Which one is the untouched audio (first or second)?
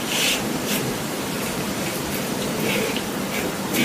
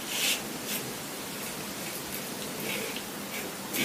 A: second